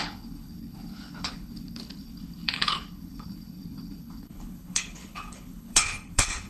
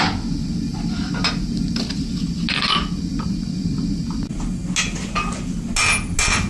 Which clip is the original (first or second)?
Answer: second